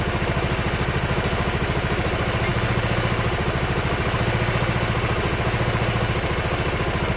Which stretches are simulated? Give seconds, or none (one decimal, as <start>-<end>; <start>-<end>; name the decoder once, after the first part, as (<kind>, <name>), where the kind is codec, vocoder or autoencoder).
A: none